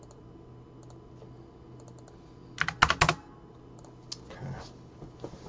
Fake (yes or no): no